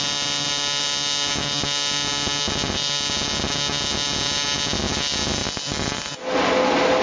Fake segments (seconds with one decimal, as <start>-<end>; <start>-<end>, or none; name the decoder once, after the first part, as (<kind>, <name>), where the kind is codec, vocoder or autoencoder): none